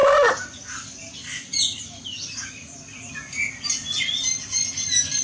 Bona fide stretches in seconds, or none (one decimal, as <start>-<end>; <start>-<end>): 0.0-5.2